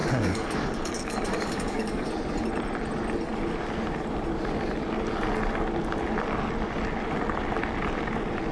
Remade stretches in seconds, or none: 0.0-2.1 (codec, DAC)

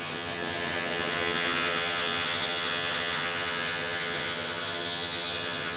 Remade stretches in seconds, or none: 0.0-5.8 (vocoder, HiFi-GAN)